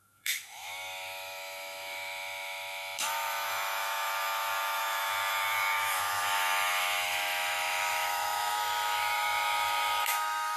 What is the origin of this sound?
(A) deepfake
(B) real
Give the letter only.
A